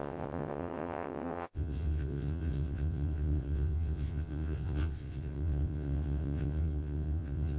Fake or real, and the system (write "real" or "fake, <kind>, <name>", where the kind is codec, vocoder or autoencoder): fake, vocoder, WaveNeXt